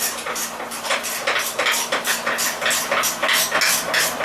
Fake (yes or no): no